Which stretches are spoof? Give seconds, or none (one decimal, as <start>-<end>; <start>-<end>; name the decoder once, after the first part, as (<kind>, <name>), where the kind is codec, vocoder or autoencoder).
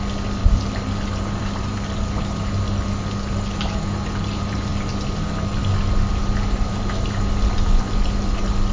none